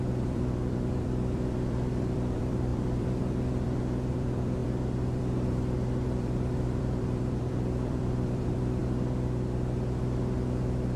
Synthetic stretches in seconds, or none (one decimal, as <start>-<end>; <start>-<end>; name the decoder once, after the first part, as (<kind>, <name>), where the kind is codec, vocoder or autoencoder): 0.0-8.8 (vocoder, BigVGAN v2)

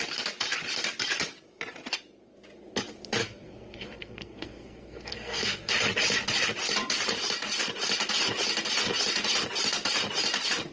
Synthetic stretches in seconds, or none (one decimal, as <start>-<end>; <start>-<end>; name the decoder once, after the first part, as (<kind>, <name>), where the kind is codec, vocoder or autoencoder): 3.2-5.7 (codec, SNAC)

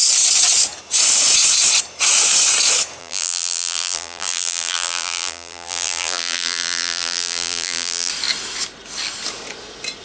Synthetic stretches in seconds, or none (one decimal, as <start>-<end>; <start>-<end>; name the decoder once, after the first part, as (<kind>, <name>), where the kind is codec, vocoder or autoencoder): 3.0-8.1 (vocoder, BigVGAN v2)

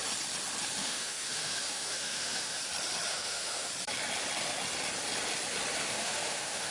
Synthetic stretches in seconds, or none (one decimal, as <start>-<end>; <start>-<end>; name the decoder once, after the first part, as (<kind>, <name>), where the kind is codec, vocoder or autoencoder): 0.8-2.6 (autoencoder, DAC-VAE); 3.1-3.7; 5.8-6.7

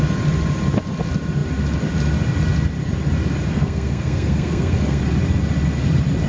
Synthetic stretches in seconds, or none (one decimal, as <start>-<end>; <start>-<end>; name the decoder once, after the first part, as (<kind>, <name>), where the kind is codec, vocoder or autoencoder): 3.5-5.0 (codec, SNAC)

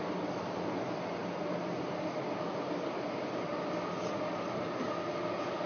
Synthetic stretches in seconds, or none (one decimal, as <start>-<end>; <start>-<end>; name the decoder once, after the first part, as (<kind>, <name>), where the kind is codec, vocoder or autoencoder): none